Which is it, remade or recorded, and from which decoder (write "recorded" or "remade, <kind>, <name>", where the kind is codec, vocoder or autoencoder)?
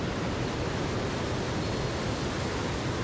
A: recorded